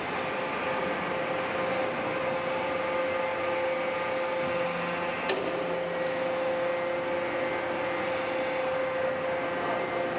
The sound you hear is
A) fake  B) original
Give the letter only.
B